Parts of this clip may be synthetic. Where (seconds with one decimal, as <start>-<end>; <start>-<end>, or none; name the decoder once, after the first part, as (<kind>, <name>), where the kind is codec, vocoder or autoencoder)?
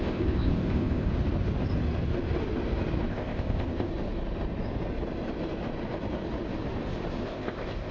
0.0-1.1 (codec, ZipCodec); 3.1-3.9; 7.2-7.9